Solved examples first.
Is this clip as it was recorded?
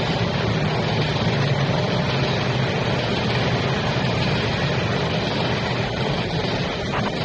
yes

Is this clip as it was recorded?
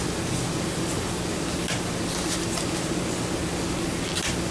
yes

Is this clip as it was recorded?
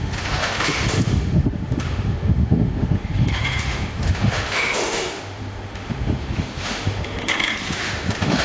no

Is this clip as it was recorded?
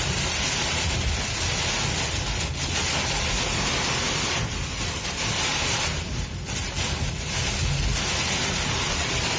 yes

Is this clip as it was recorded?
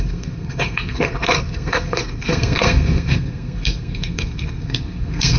no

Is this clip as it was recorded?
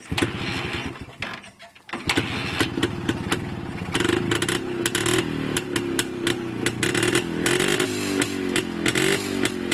yes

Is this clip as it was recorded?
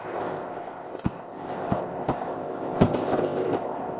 no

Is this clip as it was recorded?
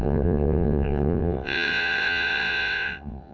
no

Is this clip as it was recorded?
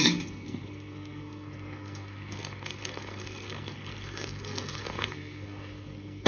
no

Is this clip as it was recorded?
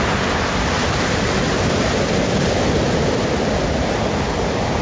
yes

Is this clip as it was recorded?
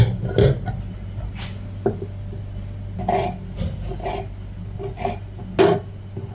yes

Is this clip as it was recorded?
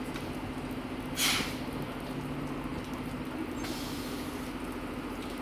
yes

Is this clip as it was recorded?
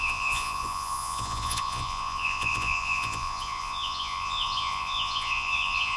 no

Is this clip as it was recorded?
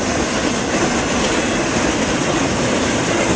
yes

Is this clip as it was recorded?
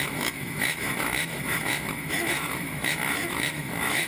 no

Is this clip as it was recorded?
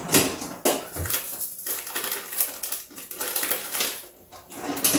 yes